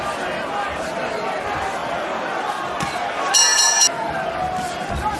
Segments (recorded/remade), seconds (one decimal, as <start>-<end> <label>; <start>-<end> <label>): 0.0-5.2 recorded